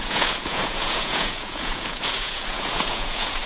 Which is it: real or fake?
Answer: fake